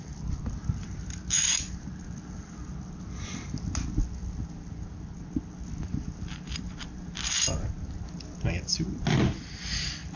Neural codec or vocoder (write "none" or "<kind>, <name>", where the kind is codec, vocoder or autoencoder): none